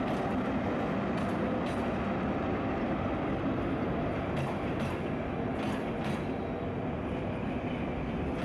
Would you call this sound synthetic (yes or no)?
no